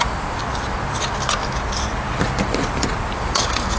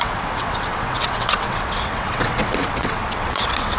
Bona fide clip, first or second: first